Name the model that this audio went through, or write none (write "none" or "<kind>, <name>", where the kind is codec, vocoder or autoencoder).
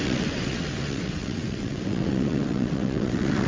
vocoder, WaveNeXt